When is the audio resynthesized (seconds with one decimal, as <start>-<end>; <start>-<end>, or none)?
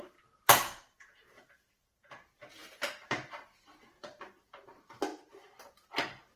0.6-2.2